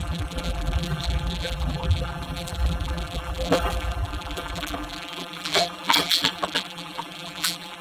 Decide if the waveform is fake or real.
fake